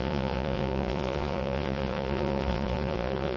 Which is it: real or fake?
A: fake